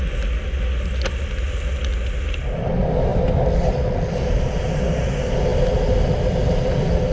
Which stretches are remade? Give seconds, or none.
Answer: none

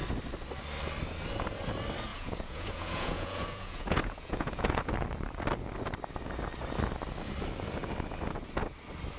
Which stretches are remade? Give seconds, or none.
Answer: 2.1-4.9 (vocoder, Vocos)

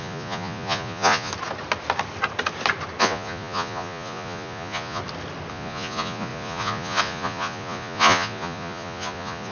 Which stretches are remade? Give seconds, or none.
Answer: 0.0-1.3 (vocoder, Vocos); 3.0-5.0; 5.5-9.5

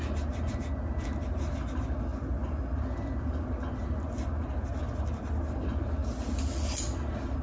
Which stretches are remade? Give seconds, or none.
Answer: none

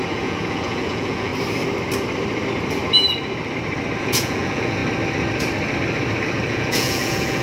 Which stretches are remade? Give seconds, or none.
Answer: 0.0-1.3 (vocoder, Vocos); 4.0-4.8; 6.5-7.4